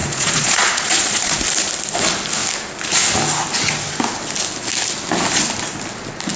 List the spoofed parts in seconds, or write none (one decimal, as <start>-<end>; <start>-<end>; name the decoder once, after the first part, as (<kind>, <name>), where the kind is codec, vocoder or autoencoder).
0.0-1.4 (vocoder, Vocos)